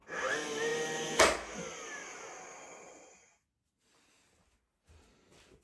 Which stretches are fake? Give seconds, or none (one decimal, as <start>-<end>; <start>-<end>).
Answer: none